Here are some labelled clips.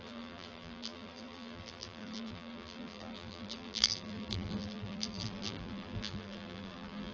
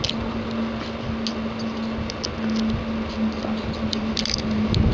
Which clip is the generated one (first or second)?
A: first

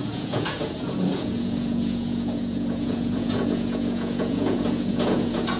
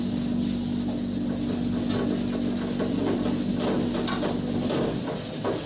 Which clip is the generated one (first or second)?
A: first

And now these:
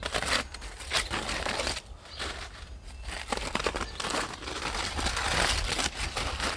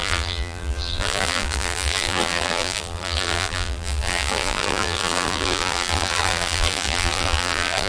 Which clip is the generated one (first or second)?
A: second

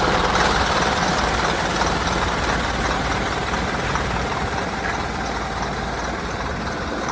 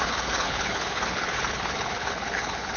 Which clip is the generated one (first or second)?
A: second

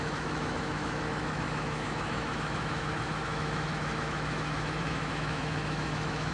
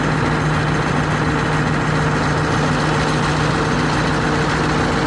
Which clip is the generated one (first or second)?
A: first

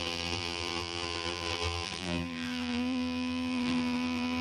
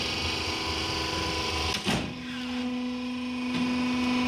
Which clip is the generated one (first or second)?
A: first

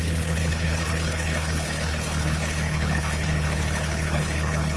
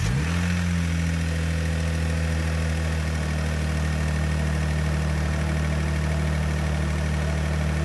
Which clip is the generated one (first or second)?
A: first